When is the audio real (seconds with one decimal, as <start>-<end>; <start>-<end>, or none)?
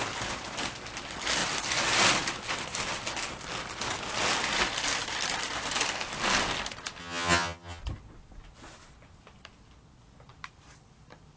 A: 0.0-7.0; 7.8-11.4